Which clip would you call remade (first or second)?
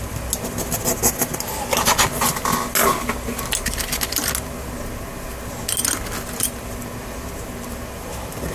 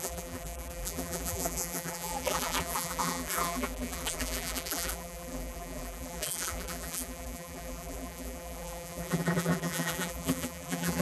second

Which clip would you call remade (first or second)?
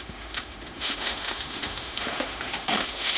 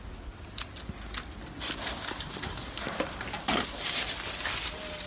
first